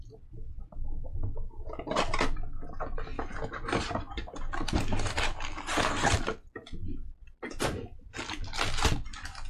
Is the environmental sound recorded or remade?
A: recorded